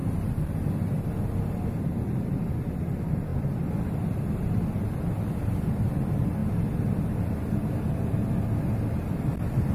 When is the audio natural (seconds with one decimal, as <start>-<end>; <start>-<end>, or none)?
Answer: 0.0-9.7